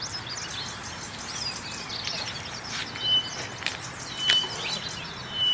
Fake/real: real